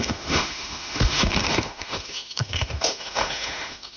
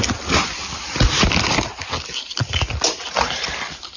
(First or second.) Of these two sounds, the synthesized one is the first